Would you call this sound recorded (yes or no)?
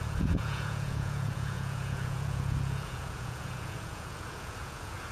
no